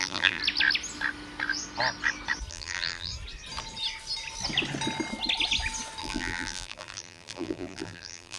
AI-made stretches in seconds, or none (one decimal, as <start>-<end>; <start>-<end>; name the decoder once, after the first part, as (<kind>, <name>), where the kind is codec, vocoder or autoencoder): 0.0-0.4 (vocoder, BigVGAN v2); 2.5-3.1; 6.0-8.4